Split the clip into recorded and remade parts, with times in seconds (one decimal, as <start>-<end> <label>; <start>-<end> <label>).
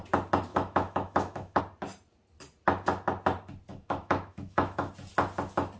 0.0-0.5 recorded; 0.5-1.6 remade; 1.6-3.7 recorded; 3.7-4.9 remade; 4.9-5.8 recorded